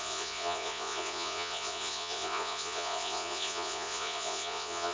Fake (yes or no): yes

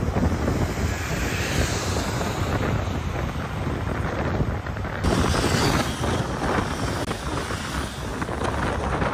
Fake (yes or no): no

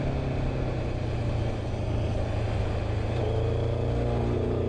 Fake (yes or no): no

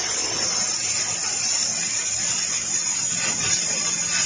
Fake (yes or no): no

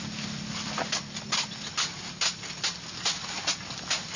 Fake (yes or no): no